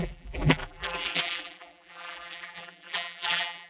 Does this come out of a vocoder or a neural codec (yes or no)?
yes